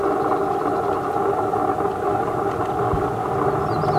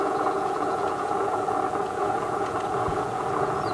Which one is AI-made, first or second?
second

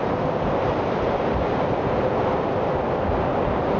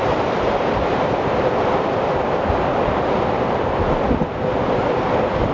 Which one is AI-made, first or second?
second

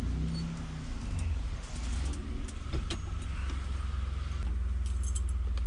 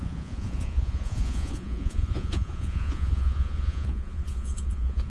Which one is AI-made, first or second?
second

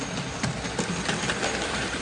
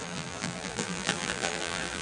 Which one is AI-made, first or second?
second